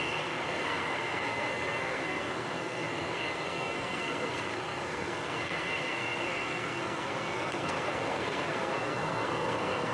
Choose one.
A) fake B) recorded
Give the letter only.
A